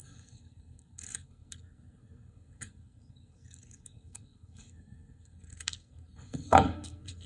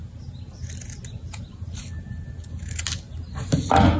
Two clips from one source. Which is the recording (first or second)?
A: second